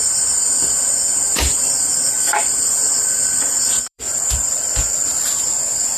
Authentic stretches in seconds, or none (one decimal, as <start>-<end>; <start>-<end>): 0.0-1.5; 5.0-6.0